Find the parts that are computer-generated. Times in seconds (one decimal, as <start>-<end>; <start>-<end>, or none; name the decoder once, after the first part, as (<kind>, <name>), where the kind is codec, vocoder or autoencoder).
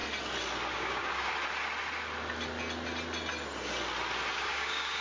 0.7-1.3 (codec, DAC); 4.3-5.0